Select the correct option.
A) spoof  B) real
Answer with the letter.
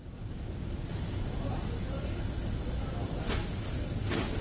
B